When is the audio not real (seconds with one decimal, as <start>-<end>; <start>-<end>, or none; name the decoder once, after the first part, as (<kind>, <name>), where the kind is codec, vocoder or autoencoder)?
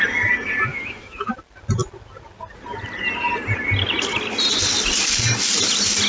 0.7-1.3 (autoencoder, DAC-VAE)